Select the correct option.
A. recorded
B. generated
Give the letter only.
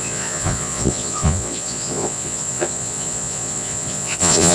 B